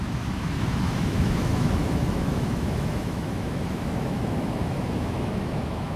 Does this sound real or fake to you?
fake